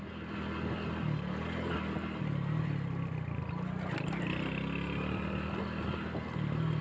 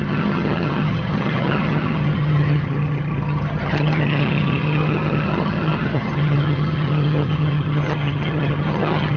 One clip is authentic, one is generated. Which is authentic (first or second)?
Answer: first